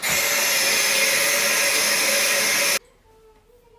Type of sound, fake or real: real